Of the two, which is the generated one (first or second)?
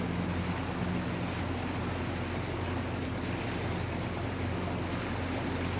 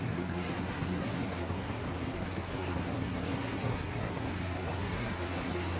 second